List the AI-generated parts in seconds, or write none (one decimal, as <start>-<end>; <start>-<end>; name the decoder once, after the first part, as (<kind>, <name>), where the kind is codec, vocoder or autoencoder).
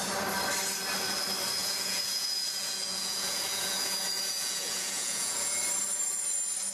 1.6-5.6 (vocoder, Vocos)